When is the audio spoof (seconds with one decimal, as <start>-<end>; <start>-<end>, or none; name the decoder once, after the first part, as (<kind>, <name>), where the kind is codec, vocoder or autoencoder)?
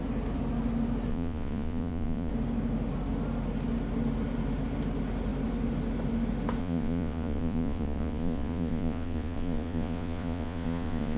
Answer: 1.1-2.3 (vocoder, Vocos); 6.6-11.2